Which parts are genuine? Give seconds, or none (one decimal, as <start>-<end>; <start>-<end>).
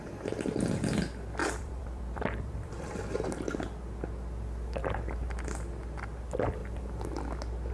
0.0-1.4; 3.0-7.7